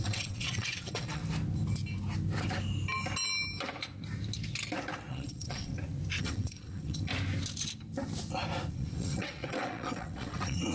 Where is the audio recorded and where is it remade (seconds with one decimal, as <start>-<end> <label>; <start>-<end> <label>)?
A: 0.0-1.2 remade; 1.2-5.1 recorded; 5.1-5.7 remade; 5.7-6.2 recorded; 6.2-7.1 remade; 7.1-8.7 recorded; 8.7-10.7 remade